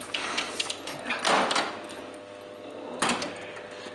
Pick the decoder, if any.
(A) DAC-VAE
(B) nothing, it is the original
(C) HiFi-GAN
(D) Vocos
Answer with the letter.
B